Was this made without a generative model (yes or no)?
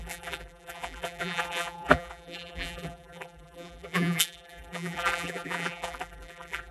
no